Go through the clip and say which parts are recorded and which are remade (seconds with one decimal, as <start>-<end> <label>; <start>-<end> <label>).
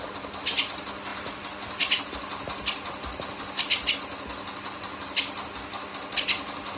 0.0-6.8 recorded